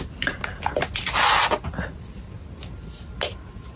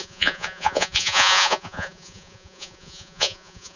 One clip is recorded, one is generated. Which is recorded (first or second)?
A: first